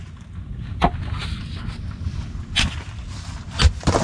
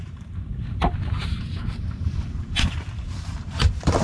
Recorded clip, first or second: first